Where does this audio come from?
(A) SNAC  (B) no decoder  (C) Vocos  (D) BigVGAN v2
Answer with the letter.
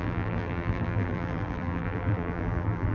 D